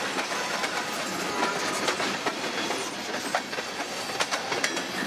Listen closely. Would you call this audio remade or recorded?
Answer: recorded